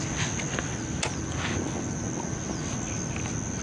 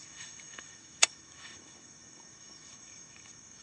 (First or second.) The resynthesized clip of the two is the second